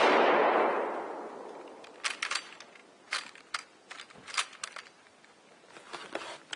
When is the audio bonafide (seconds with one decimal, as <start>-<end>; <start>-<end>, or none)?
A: 0.0-6.6